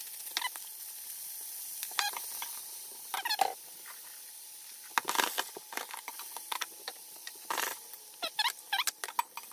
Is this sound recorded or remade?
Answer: recorded